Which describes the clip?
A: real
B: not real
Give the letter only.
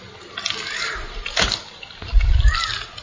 A